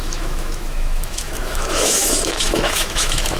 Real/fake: fake